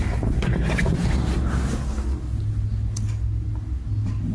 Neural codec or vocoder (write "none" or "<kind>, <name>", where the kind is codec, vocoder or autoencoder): none